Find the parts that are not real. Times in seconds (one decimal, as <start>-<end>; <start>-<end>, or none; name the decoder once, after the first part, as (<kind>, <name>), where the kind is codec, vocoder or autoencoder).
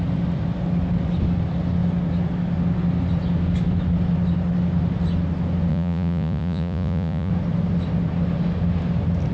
5.7-7.3 (vocoder, Vocos)